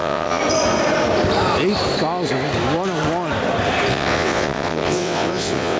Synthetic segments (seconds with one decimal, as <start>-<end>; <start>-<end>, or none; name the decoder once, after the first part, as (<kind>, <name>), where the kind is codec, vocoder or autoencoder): 0.0-0.4 (vocoder, WaveNeXt); 3.9-5.8